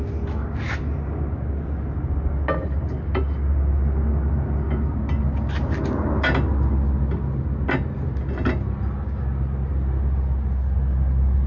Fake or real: real